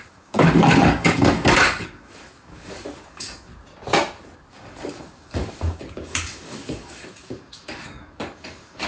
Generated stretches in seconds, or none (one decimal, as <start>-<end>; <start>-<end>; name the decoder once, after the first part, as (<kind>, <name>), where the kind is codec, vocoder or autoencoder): 0.0-3.5 (codec, DAC); 4.5-8.9